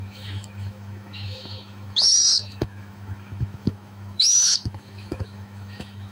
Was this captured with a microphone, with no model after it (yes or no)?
no